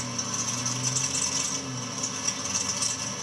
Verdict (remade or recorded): recorded